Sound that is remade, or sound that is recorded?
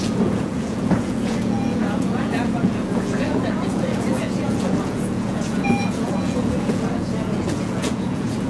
remade